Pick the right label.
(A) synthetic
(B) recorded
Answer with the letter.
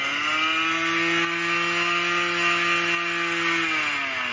B